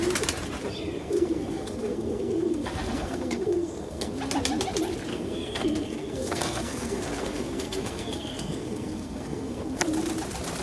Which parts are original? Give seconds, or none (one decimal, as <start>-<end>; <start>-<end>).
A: 0.0-1.0; 4.1-5.1; 9.8-10.6